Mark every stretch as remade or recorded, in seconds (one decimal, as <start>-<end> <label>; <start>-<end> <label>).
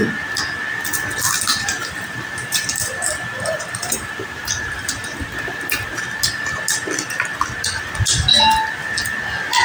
0.0-1.5 recorded; 1.5-6.4 remade; 6.4-9.6 recorded